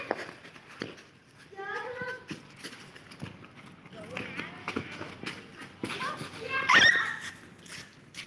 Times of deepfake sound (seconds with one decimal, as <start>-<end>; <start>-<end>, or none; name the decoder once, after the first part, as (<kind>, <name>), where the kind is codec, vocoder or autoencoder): 4.6-5.1 (autoencoder, DAC-VAE)